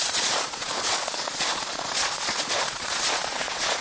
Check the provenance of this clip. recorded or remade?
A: remade